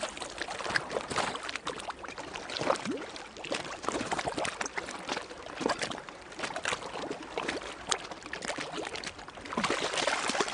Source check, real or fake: real